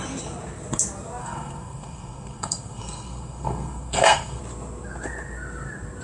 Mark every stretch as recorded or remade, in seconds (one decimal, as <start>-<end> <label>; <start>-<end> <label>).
0.0-1.2 recorded; 1.2-4.4 remade; 4.4-6.0 recorded